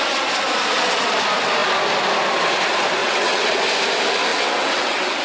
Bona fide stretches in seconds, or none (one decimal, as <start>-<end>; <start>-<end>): 0.0-3.0; 3.6-4.3